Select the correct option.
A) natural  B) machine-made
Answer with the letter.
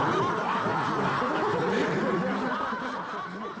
A